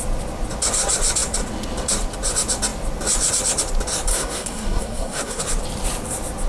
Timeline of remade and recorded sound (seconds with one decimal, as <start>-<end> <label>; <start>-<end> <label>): 0.0-4.1 recorded; 4.1-5.4 remade; 5.4-6.5 recorded